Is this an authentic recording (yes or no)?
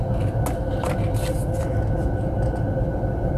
yes